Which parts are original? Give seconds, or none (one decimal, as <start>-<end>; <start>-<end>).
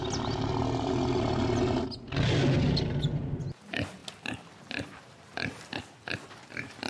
0.0-6.9